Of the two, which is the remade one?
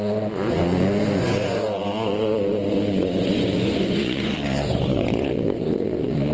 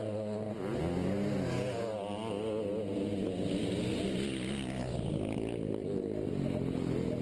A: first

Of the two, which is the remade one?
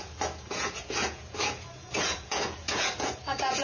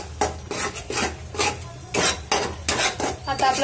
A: first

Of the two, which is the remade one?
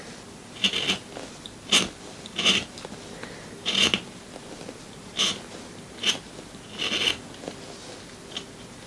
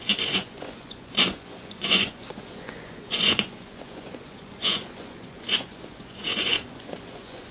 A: second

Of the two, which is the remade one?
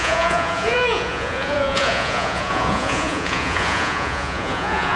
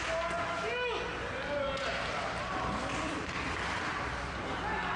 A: first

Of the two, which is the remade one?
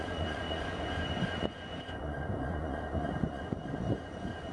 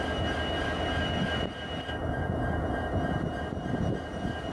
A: first